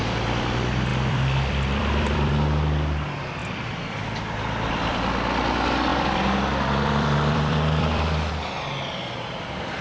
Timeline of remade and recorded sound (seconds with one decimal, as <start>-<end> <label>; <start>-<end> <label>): 0.0-0.9 recorded; 0.9-2.3 remade; 2.3-3.4 recorded; 3.4-5.0 remade; 5.0-5.9 recorded; 5.9-8.3 remade; 8.3-9.8 recorded